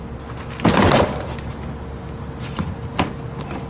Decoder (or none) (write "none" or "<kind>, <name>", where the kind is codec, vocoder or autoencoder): none